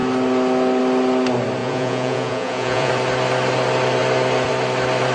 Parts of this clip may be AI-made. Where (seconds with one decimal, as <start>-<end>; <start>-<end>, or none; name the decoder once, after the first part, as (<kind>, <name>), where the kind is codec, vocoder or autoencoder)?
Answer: 1.6-2.9 (vocoder, Vocos)